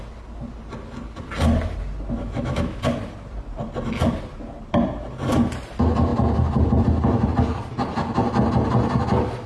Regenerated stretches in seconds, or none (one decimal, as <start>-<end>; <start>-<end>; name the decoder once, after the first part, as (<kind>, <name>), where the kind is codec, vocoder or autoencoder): 2.2-2.8 (autoencoder, DAC-VAE)